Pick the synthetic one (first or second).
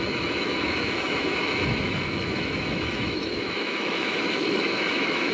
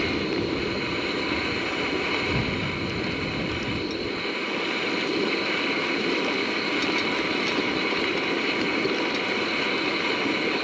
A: first